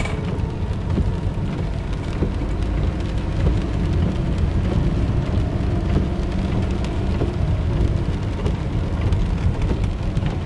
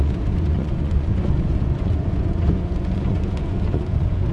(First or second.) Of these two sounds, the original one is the first